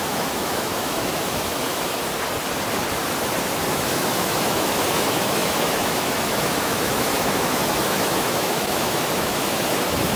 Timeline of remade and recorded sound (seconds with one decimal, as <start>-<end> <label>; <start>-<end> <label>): 0.0-2.0 remade; 2.0-3.7 recorded; 3.7-10.2 remade